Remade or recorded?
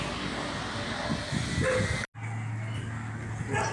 recorded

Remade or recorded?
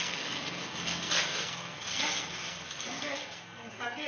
remade